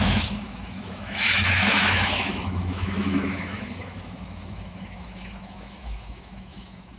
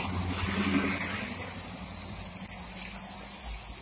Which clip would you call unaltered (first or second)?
second